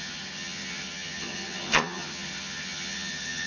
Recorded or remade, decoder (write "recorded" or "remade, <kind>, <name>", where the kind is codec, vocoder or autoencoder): remade, vocoder, HiFi-GAN